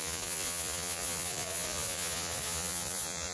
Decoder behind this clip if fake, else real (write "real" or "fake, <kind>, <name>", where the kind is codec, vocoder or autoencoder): fake, vocoder, Vocos